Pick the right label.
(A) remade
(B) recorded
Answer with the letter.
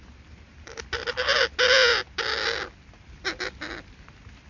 B